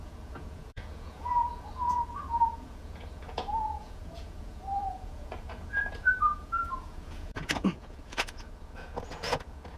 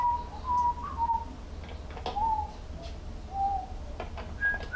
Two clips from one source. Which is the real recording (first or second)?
second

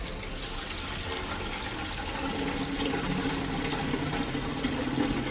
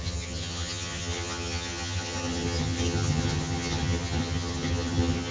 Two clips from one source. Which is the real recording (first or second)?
first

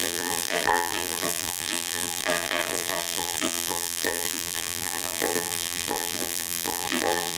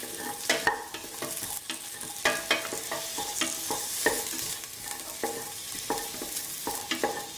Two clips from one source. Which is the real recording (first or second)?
second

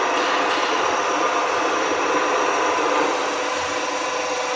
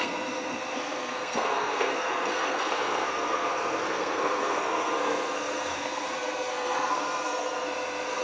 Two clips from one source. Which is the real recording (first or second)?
first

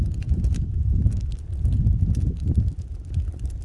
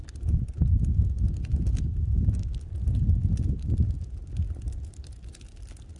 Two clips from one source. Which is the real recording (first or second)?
second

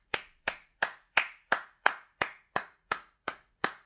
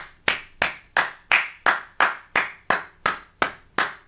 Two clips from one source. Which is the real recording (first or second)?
second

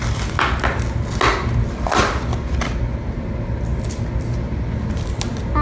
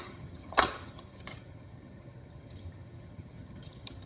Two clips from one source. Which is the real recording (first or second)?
first